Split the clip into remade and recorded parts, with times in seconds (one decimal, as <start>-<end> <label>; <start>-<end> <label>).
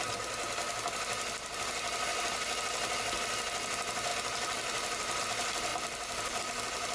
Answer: 0.0-5.7 recorded; 5.7-6.4 remade; 6.4-6.9 recorded